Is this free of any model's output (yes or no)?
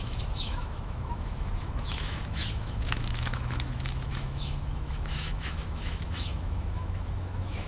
no